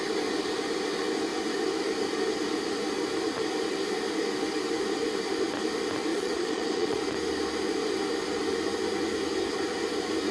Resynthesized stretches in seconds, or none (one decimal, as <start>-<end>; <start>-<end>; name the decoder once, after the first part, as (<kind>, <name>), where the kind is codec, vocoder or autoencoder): 6.1-7.0 (vocoder, Vocos)